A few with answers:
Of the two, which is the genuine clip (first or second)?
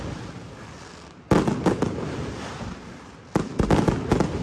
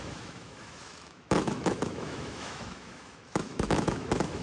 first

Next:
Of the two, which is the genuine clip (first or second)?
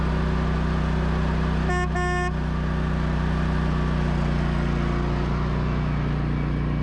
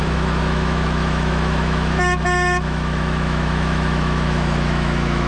first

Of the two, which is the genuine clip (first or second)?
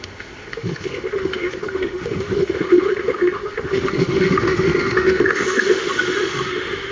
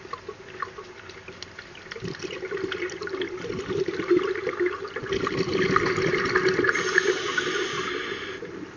second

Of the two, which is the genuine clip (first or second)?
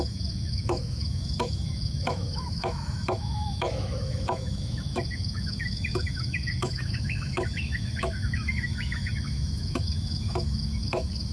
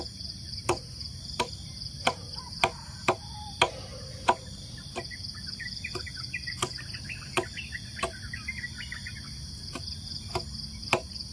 second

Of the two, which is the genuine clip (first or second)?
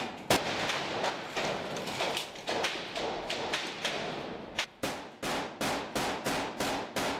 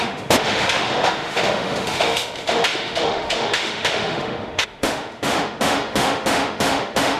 first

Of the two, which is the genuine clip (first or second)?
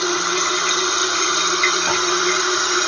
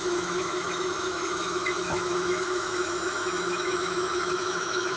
first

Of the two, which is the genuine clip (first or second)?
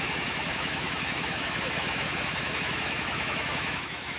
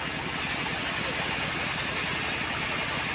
second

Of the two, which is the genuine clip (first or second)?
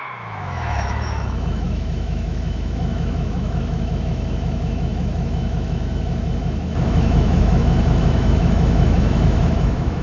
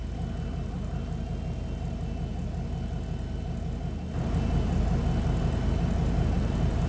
second